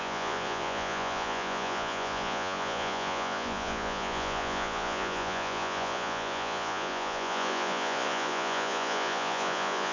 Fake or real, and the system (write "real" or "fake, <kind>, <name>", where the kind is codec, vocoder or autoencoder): fake, vocoder, Vocos